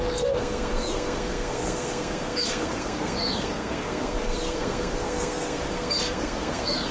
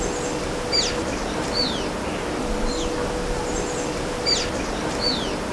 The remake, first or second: first